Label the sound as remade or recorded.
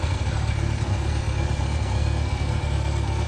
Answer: remade